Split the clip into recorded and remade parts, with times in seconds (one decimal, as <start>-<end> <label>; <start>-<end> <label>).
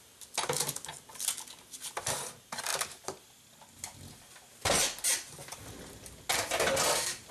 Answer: 0.0-7.3 recorded